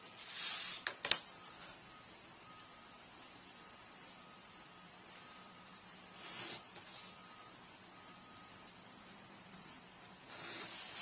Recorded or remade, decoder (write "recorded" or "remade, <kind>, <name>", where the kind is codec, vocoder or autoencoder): recorded